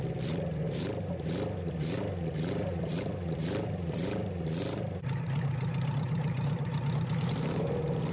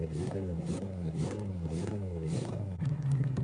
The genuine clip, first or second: first